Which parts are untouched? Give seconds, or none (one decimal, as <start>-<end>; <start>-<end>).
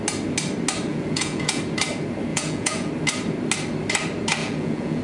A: 0.0-0.9; 1.6-2.3; 2.9-4.4